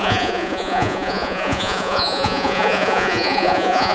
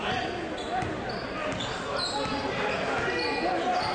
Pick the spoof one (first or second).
first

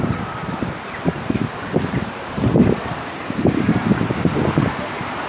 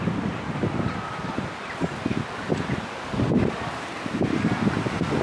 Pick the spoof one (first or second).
first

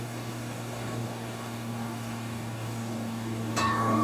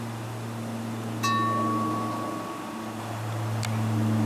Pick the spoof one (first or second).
first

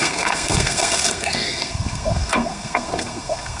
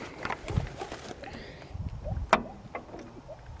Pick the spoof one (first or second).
first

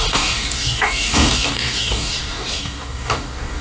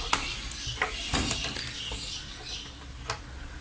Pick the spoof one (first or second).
first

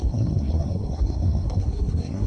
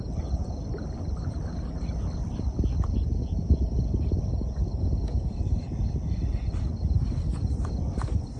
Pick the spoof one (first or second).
first